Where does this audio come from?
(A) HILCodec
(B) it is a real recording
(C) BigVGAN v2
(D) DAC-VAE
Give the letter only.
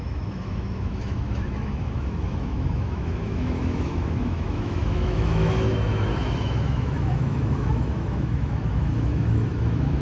D